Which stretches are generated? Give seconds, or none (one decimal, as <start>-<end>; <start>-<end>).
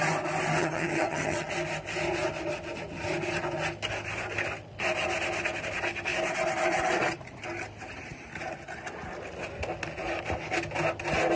0.6-1.5